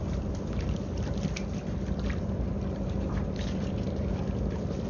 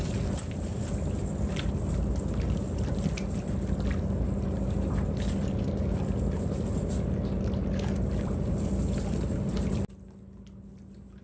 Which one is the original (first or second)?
second